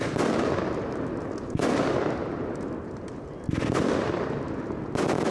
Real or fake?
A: real